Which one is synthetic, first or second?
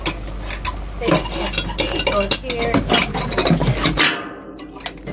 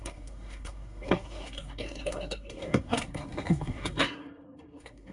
second